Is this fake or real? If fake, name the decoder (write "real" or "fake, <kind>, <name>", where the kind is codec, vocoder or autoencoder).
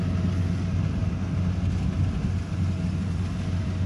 real